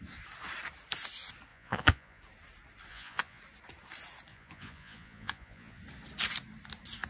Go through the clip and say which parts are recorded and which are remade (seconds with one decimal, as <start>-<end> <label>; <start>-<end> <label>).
0.0-1.5 recorded; 1.5-2.2 remade; 2.2-2.9 recorded; 2.9-3.4 remade; 3.4-4.3 recorded; 4.3-5.8 remade; 5.8-7.1 recorded